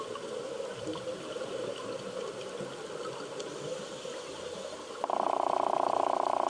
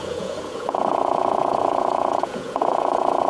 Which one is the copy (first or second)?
second